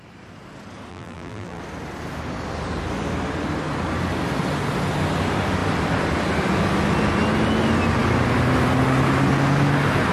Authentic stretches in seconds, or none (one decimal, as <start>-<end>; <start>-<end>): 0.0-0.9; 1.6-10.1